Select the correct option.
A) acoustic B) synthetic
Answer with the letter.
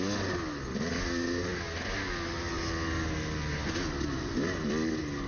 A